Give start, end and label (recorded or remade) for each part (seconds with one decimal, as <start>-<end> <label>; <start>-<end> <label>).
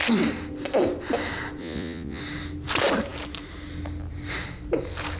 0.0-1.6 recorded; 1.6-2.2 remade; 2.2-5.2 recorded